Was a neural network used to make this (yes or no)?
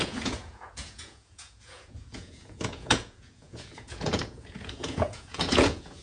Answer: yes